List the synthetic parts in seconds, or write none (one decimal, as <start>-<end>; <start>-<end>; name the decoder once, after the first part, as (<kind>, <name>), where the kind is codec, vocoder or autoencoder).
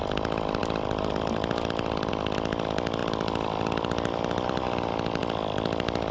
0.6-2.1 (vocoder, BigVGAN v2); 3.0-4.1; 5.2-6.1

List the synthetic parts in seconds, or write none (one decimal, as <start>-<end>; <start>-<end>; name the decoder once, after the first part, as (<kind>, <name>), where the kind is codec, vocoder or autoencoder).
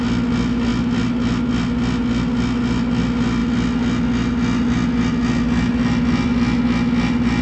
none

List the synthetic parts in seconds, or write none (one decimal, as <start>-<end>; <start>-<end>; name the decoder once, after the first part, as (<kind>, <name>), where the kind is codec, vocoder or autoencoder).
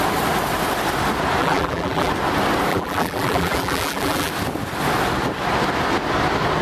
1.4-2.1 (vocoder, BigVGAN v2); 2.7-4.3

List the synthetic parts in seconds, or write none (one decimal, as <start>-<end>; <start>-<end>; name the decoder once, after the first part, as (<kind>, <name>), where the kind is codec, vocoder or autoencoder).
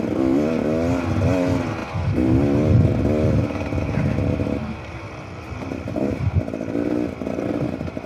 1.8-2.3 (vocoder, BigVGAN v2)